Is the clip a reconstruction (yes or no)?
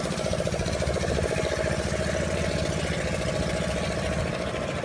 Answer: no